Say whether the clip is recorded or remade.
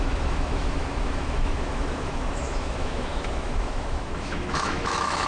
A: remade